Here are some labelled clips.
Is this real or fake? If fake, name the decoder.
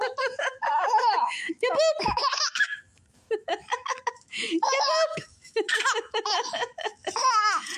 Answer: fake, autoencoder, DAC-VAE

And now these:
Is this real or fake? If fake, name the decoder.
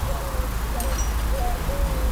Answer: real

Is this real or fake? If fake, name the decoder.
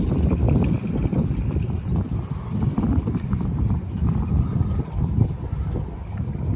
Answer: real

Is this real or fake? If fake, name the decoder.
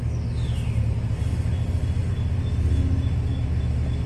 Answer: real